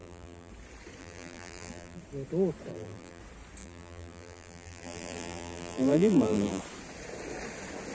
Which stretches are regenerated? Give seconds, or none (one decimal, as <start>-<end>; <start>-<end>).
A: 0.0-0.5; 1.0-2.0; 2.7-3.2; 3.6-6.6